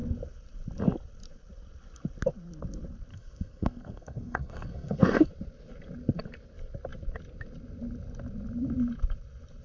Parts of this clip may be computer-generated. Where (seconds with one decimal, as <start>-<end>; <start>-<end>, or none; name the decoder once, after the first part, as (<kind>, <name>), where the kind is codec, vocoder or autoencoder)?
3.1-5.3 (codec, SNAC)